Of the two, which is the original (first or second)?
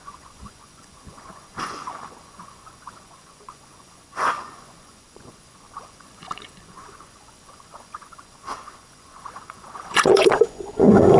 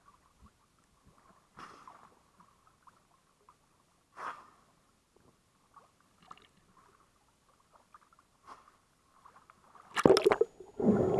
second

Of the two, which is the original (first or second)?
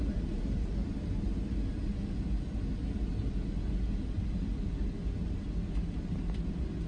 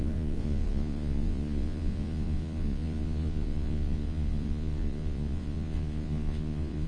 first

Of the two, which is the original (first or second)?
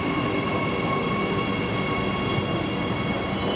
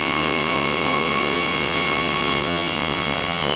first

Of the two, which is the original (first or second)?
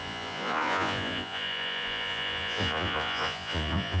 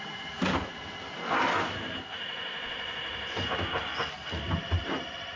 second